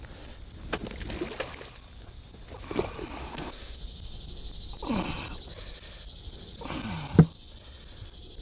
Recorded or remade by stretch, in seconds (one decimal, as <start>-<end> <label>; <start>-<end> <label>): 0.0-3.2 recorded; 3.2-3.8 remade; 3.8-8.4 recorded